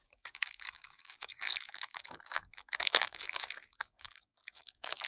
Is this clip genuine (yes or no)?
no